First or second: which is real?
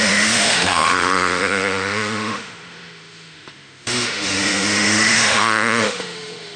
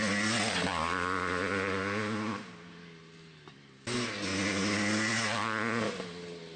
second